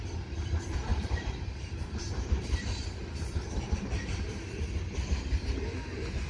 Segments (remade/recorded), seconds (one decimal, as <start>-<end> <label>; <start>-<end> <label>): 0.0-0.9 recorded; 0.9-4.3 remade; 4.3-6.3 recorded